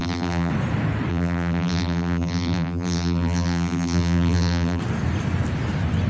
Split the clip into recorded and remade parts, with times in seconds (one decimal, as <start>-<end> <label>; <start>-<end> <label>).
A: 0.0-0.5 remade; 0.5-1.1 recorded; 1.1-4.8 remade; 4.8-6.1 recorded